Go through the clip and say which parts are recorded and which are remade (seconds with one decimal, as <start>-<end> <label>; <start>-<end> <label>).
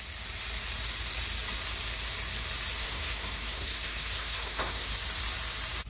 0.0-2.8 recorded; 2.8-4.9 remade; 4.9-5.9 recorded